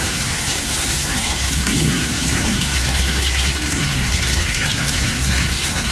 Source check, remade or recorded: remade